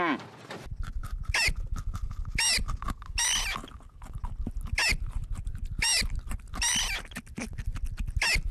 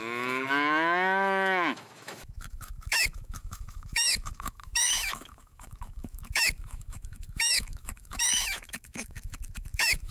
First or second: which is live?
first